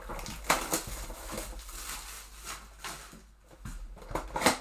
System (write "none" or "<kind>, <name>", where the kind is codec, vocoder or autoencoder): none